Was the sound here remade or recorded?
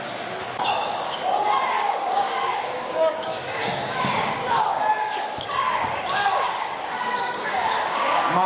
remade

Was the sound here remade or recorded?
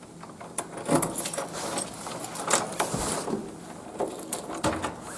recorded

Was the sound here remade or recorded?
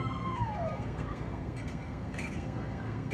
remade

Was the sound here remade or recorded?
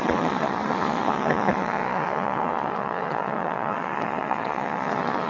remade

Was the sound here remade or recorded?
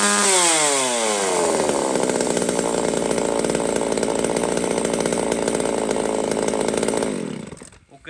recorded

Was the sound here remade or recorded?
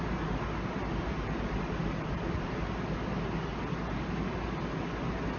recorded